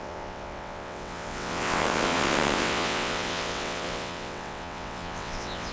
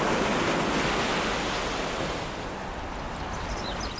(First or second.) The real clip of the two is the second